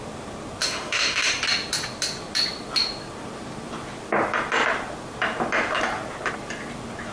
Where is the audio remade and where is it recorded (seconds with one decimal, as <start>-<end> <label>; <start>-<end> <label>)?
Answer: 0.0-0.6 recorded; 0.6-1.3 remade; 1.3-7.1 recorded